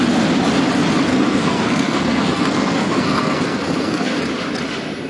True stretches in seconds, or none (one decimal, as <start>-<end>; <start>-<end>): 0.0-1.1; 4.2-5.1